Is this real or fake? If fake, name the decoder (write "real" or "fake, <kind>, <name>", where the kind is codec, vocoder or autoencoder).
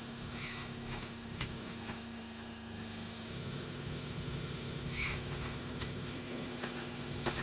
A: fake, autoencoder, DAC-VAE